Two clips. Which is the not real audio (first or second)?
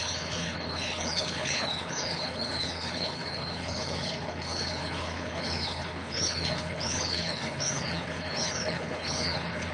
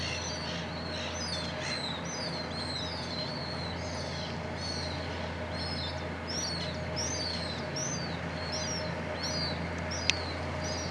first